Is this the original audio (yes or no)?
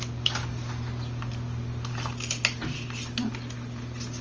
yes